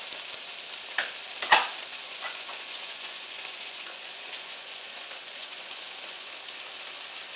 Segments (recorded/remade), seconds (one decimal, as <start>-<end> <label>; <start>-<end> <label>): 0.0-1.9 recorded; 1.9-6.3 remade; 6.3-7.4 recorded